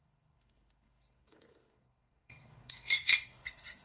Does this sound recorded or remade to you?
remade